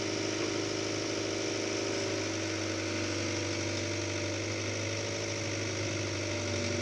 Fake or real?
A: real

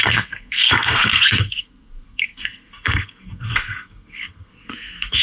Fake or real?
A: fake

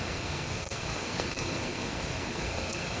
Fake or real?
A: fake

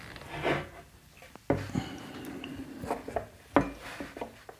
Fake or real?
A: real